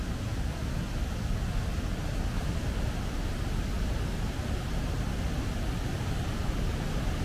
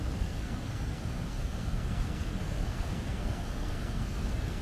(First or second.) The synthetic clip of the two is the second